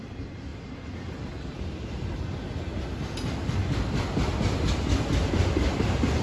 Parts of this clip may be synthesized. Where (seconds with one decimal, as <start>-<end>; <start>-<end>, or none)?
none